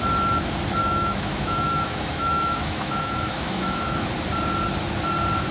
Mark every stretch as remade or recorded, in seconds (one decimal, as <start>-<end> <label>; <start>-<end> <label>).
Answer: 0.0-0.8 recorded; 0.8-4.1 remade; 4.1-5.5 recorded